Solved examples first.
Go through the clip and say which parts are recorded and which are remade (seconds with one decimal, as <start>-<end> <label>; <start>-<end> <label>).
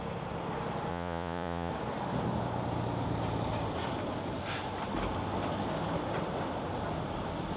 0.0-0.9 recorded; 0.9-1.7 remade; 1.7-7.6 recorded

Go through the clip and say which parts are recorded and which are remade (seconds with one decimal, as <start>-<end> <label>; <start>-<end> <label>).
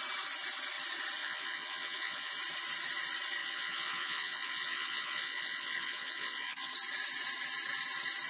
0.0-1.2 recorded; 1.2-2.3 remade; 2.3-3.4 recorded; 3.4-6.7 remade; 6.7-8.3 recorded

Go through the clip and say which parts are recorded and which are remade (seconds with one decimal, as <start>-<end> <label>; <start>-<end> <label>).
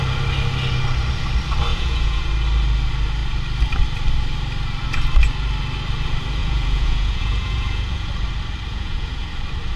0.0-1.7 recorded; 1.7-2.3 remade; 2.3-6.4 recorded; 6.4-8.1 remade; 8.1-8.7 recorded; 8.7-9.3 remade; 9.3-9.8 recorded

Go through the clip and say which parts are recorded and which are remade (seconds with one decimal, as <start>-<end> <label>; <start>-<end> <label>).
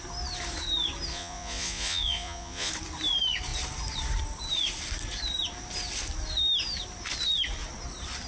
0.0-1.1 recorded; 1.1-2.7 remade; 2.7-8.3 recorded